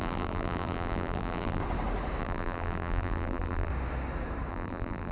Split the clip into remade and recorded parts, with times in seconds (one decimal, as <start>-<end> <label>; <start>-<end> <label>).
0.0-1.6 remade; 1.6-2.2 recorded; 2.2-3.7 remade; 3.7-4.5 recorded; 4.5-5.1 remade